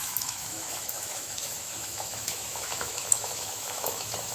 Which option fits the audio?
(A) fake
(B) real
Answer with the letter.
A